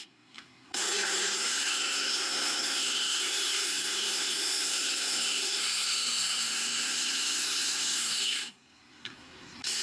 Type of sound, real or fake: fake